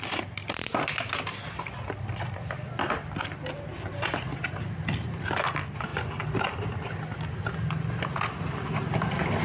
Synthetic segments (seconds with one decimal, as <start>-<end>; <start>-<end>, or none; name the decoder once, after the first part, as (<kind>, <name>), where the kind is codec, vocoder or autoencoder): none